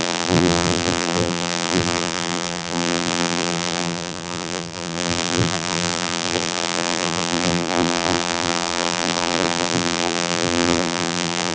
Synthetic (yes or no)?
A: yes